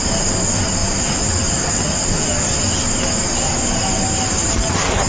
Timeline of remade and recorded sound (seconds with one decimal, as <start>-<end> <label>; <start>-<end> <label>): 0.0-5.1 recorded